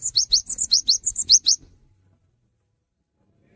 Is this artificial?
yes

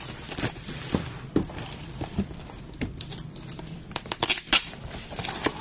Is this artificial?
yes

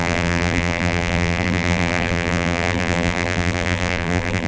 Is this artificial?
yes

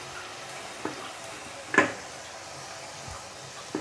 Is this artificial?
no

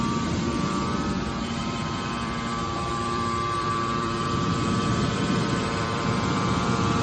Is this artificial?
yes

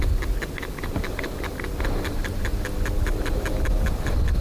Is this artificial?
no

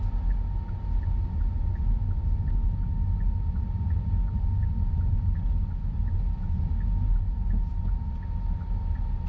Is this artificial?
no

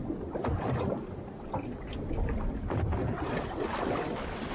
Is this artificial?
no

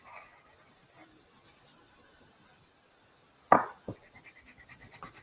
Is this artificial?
yes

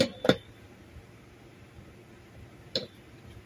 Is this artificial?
no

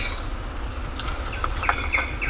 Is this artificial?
no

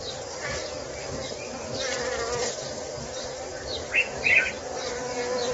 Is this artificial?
no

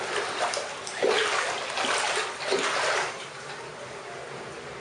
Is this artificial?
no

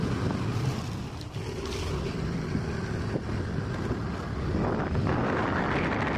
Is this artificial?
no